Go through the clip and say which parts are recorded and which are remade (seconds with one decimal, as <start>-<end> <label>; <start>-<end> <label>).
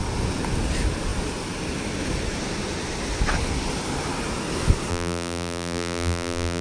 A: 0.0-4.9 recorded; 4.9-6.6 remade